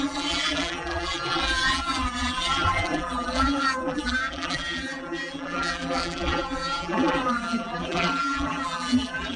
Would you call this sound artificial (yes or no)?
yes